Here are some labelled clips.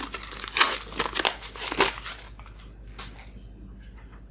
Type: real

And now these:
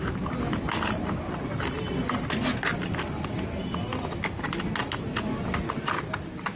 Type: real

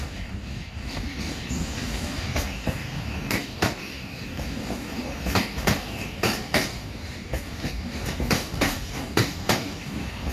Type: fake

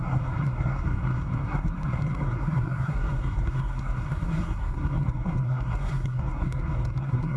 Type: fake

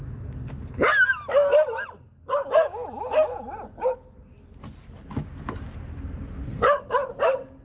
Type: real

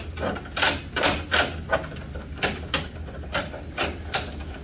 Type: real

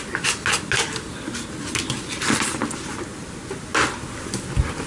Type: real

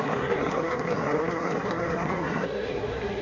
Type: fake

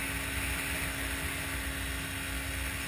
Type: real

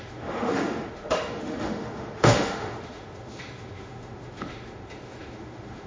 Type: fake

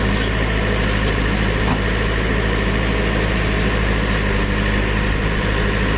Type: real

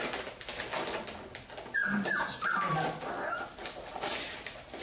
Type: real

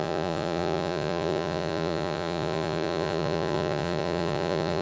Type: fake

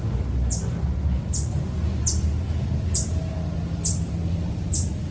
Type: real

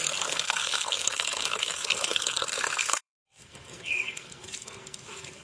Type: fake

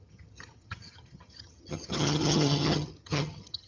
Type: fake